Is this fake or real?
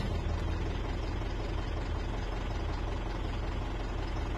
real